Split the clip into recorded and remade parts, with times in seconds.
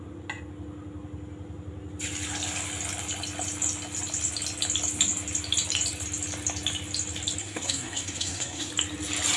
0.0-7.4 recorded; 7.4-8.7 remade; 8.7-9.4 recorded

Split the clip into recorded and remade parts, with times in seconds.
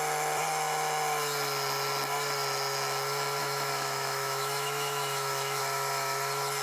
0.0-3.4 recorded; 3.4-5.6 remade; 5.6-6.6 recorded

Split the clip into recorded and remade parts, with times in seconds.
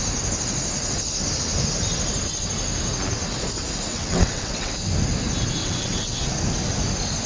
0.0-3.9 recorded; 3.9-4.7 remade; 4.7-5.6 recorded; 5.6-6.3 remade; 6.3-7.3 recorded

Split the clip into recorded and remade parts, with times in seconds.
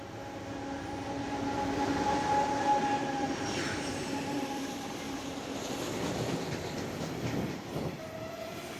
0.0-3.0 recorded; 3.0-6.4 remade; 6.4-8.8 recorded